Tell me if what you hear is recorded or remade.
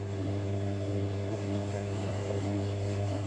remade